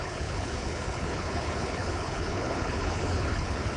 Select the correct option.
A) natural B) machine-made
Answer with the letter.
B